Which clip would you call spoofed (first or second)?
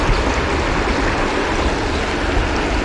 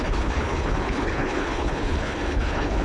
second